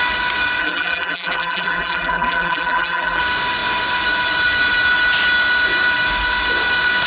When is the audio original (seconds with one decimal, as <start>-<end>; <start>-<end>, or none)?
0.0-0.6; 3.2-7.1